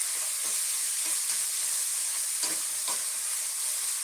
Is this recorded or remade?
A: recorded